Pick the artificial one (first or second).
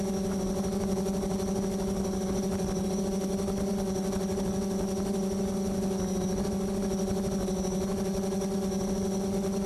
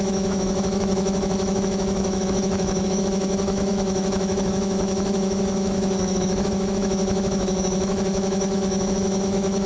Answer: second